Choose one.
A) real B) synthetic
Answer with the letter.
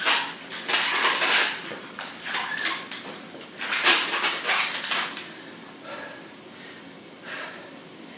A